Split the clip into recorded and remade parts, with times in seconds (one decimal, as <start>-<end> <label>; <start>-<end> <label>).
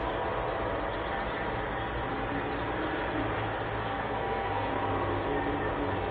0.0-3.8 recorded; 3.8-4.7 remade; 4.7-6.1 recorded